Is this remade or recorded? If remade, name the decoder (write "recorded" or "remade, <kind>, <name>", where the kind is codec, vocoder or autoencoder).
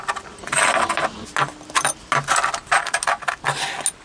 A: recorded